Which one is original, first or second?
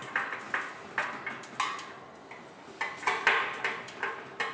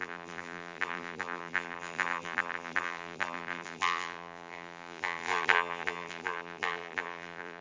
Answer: first